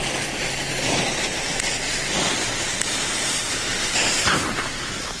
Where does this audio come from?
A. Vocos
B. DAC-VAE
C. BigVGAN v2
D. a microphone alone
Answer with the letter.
D